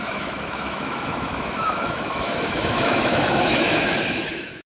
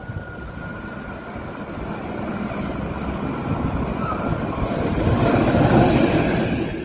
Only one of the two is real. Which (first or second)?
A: second